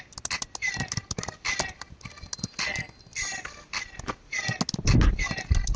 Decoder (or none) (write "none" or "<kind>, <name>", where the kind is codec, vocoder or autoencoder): none